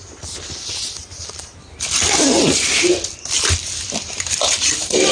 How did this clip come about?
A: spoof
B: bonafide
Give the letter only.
B